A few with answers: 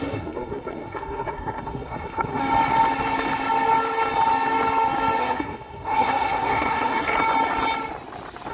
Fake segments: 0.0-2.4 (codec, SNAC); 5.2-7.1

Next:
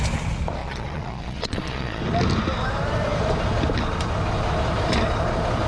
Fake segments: 0.6-2.0 (vocoder, Vocos)

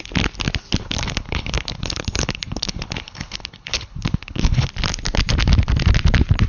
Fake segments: 0.8-4.7 (codec, HILCodec)

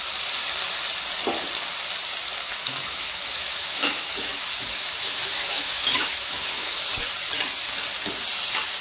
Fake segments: 2.4-6.8 (autoencoder, DAC-VAE)

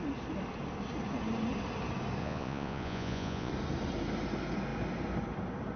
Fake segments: 2.2-3.5 (vocoder, Vocos)

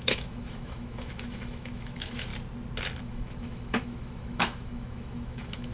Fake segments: 0.0-2.3 (autoencoder, DAC-VAE); 3.0-5.7